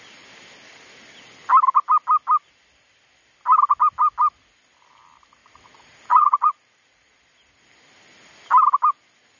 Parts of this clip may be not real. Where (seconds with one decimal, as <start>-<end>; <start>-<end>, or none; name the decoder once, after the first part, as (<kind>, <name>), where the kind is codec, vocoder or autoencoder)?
5.4-7.2 (vocoder, Vocos)